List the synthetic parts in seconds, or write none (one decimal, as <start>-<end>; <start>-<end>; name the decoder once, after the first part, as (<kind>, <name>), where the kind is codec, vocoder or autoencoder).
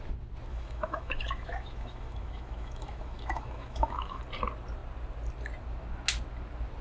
0.5-4.2 (autoencoder, DAC-VAE)